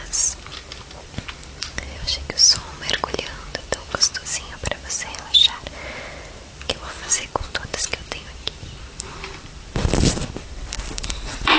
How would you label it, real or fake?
fake